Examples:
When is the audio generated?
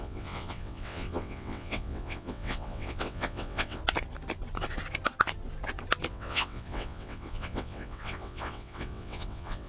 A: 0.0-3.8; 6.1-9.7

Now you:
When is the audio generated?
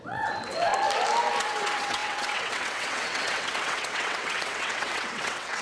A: 0.0-0.7; 1.4-5.6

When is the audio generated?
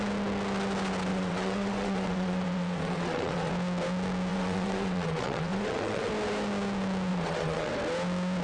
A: 1.1-3.5; 4.3-6.1; 7.1-7.7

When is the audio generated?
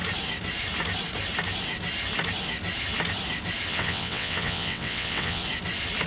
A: 3.7-5.4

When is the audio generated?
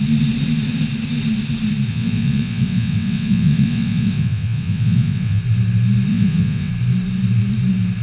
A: 1.9-5.4; 6.1-6.7